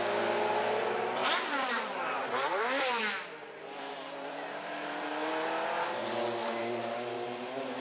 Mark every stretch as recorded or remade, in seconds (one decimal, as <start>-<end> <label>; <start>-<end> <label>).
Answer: 0.0-1.2 recorded; 1.2-5.3 remade; 5.3-7.8 recorded

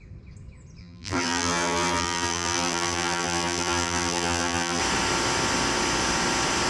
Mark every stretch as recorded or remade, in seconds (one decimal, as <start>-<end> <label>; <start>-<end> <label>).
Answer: 0.0-0.8 recorded; 0.8-4.8 remade; 4.8-6.7 recorded